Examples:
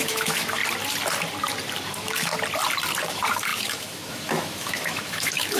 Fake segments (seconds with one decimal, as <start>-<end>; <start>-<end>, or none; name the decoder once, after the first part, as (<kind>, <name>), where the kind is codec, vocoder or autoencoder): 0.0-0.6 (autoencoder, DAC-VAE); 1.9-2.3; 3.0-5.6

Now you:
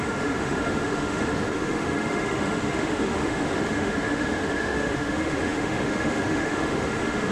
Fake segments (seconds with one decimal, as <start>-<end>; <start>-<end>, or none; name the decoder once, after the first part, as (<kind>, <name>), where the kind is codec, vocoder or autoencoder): 0.0-7.3 (autoencoder, DAC-VAE)

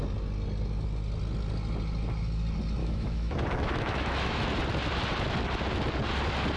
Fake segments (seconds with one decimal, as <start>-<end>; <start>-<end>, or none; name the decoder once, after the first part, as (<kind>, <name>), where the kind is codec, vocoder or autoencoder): 2.8-4.5 (autoencoder, DAC-VAE)